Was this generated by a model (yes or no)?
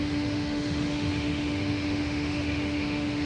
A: yes